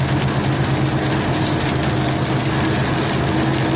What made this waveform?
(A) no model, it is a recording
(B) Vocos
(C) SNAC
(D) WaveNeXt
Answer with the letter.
A